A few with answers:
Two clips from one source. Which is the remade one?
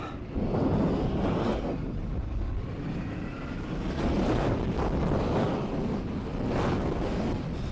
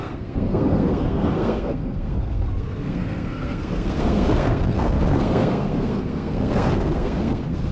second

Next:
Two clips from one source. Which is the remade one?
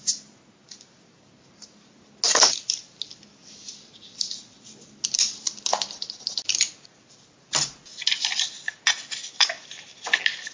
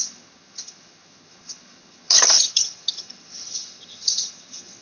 second